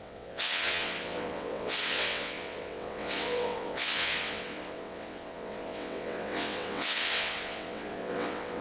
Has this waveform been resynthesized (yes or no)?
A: yes